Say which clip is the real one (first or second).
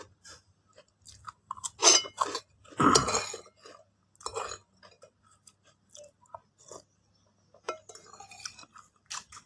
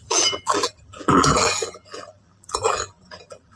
first